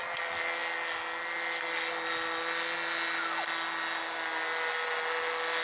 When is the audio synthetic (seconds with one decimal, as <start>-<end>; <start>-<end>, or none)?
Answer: none